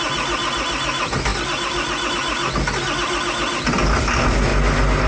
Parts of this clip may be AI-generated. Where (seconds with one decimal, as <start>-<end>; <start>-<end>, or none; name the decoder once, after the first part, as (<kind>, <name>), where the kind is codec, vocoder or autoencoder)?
none

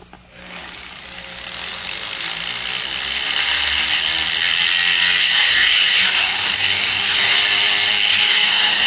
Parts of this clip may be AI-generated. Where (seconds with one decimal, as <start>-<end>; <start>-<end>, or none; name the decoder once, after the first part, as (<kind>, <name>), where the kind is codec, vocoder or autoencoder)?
5.2-7.4 (codec, DAC); 8.1-8.9

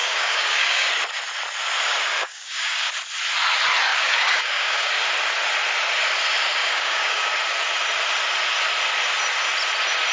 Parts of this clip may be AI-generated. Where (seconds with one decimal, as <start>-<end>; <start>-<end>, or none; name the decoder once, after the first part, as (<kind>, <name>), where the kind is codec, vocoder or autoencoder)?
0.0-0.9 (codec, DAC); 2.1-2.9; 3.9-4.9; 6.6-7.3